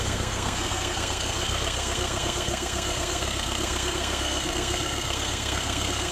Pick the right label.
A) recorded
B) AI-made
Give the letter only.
B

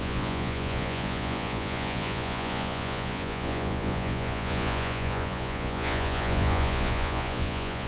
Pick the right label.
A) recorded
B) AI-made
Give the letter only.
B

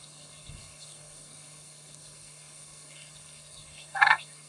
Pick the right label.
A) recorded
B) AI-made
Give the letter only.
B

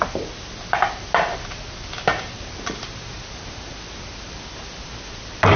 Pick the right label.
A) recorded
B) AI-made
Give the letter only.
A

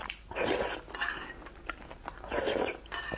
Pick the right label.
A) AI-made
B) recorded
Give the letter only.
B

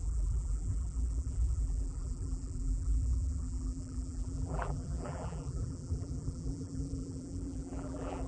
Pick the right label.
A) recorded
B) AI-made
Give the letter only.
B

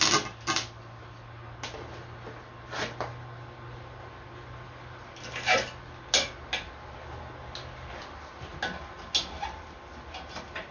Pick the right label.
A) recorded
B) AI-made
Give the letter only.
A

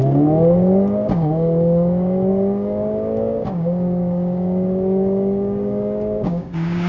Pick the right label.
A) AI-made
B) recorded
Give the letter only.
A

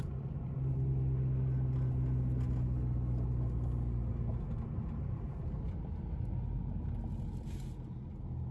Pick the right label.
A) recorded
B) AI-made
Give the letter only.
A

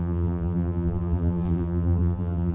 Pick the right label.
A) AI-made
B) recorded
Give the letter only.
A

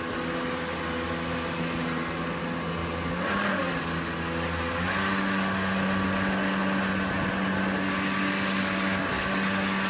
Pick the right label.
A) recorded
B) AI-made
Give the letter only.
A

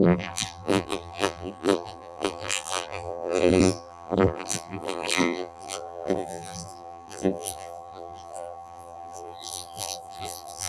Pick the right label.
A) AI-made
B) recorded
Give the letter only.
A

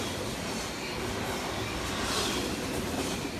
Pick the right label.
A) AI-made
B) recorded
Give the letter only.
B